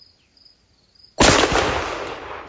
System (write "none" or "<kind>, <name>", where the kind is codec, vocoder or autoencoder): none